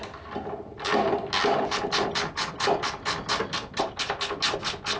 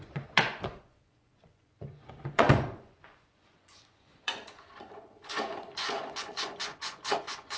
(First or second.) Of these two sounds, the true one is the first